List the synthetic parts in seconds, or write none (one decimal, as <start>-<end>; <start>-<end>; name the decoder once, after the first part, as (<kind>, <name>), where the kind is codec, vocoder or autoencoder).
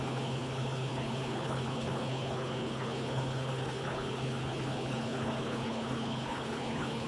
0.0-7.1 (codec, HILCodec)